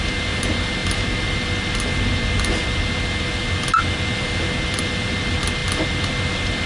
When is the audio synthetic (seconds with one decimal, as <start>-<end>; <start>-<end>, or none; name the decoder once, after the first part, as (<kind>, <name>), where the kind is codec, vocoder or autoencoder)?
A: none